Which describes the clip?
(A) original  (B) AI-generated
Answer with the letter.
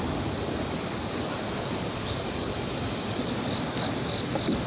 A